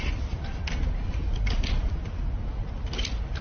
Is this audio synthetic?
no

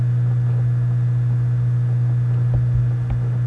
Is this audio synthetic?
no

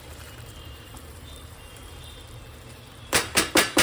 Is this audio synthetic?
yes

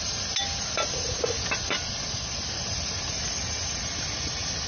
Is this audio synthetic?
no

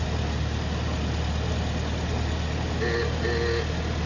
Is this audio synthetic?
no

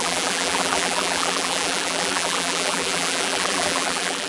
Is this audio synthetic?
yes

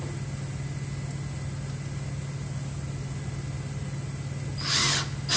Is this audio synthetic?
no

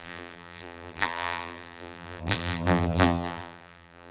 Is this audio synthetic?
yes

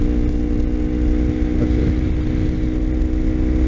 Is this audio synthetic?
no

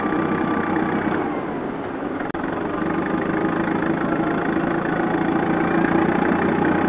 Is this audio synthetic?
no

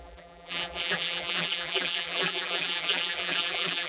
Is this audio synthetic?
yes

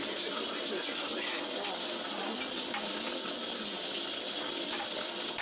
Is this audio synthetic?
yes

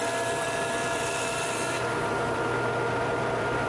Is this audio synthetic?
yes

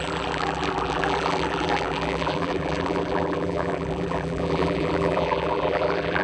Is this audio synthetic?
yes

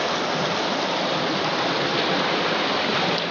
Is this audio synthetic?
no